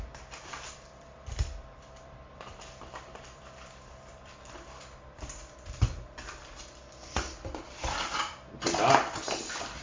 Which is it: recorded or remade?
remade